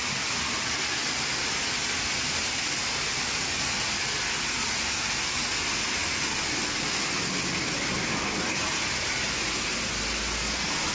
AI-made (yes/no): no